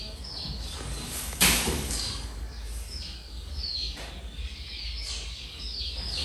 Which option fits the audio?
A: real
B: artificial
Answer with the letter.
B